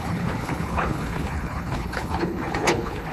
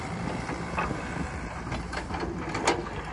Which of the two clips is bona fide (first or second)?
second